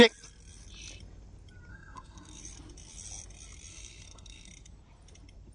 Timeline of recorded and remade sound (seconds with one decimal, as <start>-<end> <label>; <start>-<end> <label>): 0.0-1.7 recorded; 1.7-2.4 remade; 2.4-3.7 recorded; 3.7-4.5 remade; 4.5-5.5 recorded